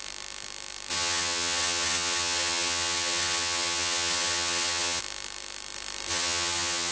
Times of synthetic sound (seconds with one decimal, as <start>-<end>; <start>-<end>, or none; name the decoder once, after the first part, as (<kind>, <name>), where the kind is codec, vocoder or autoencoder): 0.9-5.0 (vocoder, HiFi-GAN); 6.1-6.9

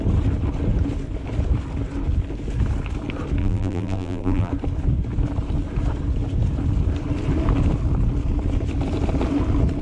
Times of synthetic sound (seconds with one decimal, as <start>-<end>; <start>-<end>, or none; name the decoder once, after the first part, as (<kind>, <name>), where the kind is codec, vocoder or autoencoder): 3.4-4.5 (vocoder, BigVGAN v2)